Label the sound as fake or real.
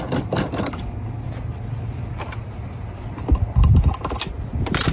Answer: real